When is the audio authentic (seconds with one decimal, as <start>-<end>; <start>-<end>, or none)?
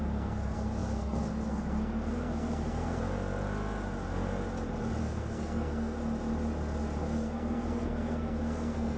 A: 3.0-5.0; 6.0-7.0